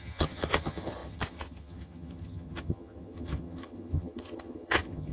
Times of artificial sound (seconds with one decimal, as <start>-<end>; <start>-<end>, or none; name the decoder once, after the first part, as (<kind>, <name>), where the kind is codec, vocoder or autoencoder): 0.0-5.1 (vocoder, HiFi-GAN)